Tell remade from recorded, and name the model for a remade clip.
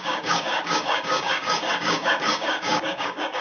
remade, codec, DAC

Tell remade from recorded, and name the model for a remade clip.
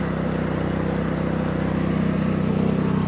recorded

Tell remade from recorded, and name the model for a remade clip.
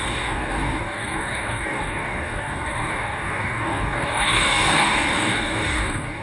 remade, codec, DAC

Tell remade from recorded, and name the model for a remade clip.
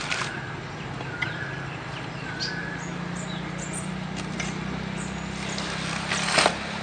recorded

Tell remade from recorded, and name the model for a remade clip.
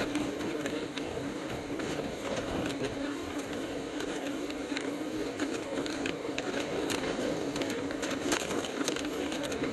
remade, codec, DAC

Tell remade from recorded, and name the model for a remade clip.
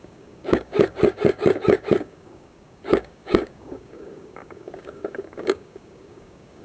remade, codec, DAC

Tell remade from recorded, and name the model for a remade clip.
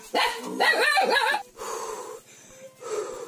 recorded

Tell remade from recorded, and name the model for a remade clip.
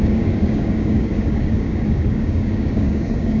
remade, codec, DAC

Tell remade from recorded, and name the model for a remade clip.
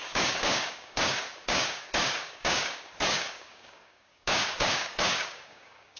remade, codec, DAC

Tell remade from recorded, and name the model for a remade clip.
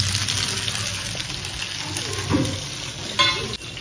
recorded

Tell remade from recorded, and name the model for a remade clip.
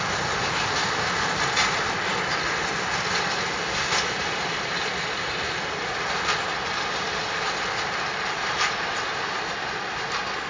recorded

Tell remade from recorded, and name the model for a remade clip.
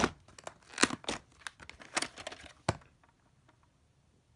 recorded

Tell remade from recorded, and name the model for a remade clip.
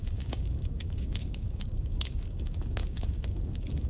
remade, codec, DAC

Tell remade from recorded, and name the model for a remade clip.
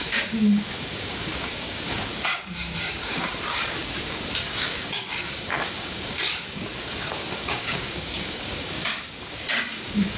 remade, codec, DAC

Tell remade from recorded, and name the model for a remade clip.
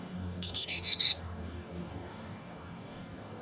remade, codec, DAC